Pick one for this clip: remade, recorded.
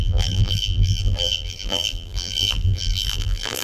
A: remade